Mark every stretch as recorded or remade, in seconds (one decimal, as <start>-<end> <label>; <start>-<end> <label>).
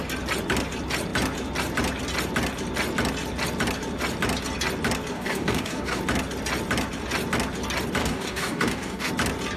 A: 0.0-5.1 recorded; 5.1-6.0 remade; 6.0-8.0 recorded; 8.0-9.1 remade; 9.1-9.6 recorded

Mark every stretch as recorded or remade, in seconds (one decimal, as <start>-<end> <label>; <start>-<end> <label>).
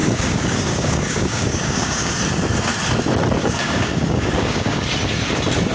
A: 0.0-2.2 remade; 2.2-3.4 recorded; 3.4-4.8 remade; 4.8-5.7 recorded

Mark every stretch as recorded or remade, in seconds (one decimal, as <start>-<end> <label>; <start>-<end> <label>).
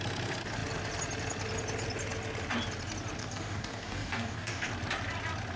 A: 0.0-3.2 recorded; 3.2-4.7 remade; 4.7-5.6 recorded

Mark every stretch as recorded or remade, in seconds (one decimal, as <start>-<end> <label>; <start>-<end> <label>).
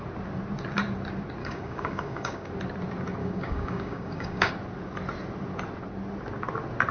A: 0.0-1.4 recorded; 1.4-2.5 remade; 2.5-3.2 recorded; 3.2-4.5 remade; 4.5-6.9 recorded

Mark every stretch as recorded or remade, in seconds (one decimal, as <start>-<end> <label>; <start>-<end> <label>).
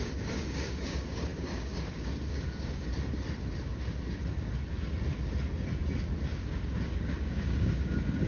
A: 0.0-2.9 remade; 2.9-6.3 recorded; 6.3-8.3 remade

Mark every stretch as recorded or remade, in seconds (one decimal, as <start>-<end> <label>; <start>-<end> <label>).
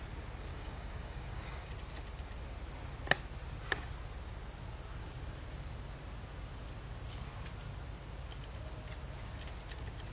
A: 0.0-0.5 recorded; 0.5-1.7 remade; 1.7-10.1 recorded